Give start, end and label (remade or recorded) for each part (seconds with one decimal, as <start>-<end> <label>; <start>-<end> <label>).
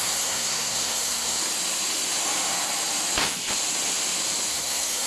0.0-1.4 remade; 1.4-4.5 recorded; 4.5-5.1 remade